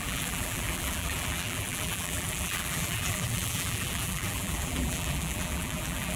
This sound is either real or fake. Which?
fake